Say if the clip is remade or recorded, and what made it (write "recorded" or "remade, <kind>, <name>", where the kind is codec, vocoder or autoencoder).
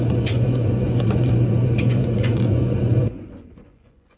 remade, vocoder, Vocos